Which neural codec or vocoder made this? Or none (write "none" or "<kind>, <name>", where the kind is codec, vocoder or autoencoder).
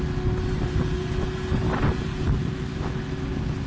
none